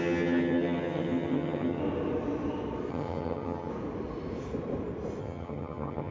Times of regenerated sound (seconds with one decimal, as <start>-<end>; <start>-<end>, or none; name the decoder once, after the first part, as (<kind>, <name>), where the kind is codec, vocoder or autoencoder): 0.0-1.8 (vocoder, HiFi-GAN); 2.9-3.7; 5.2-6.1